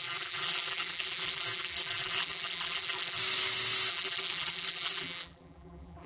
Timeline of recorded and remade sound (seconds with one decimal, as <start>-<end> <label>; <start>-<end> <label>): 0.0-3.2 remade; 3.2-3.9 recorded; 3.9-6.1 remade